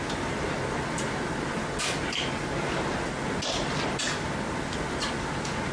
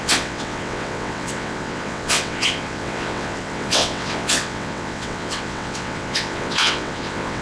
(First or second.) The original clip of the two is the first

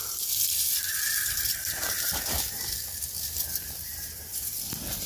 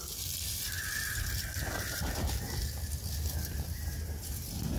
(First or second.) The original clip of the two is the second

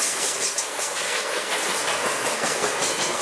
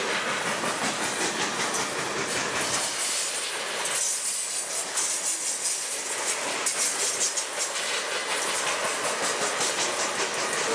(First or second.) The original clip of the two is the second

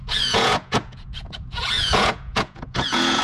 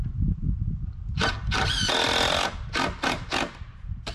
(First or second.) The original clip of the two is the second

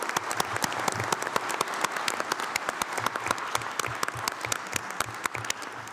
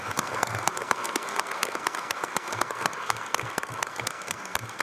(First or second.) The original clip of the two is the first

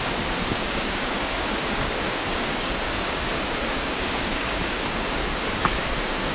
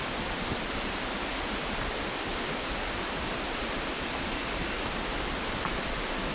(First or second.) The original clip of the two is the second